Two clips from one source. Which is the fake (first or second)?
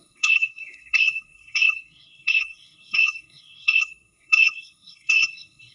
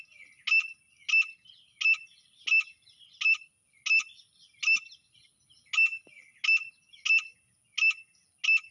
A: first